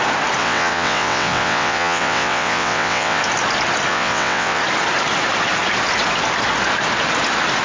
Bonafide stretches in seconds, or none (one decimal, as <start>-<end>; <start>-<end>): 0.0-0.4; 3.2-3.9; 4.6-7.6